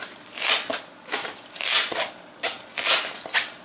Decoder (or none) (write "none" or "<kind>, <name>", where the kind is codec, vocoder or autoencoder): none